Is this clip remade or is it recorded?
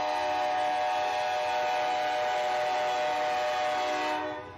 recorded